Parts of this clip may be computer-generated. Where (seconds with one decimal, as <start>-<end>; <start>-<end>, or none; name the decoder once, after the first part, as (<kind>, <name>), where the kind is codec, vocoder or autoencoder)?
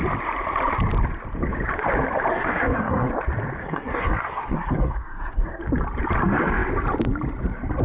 2.3-3.1 (codec, SNAC); 3.6-5.6